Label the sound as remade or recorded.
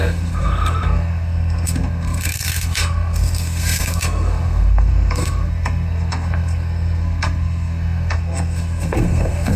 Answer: remade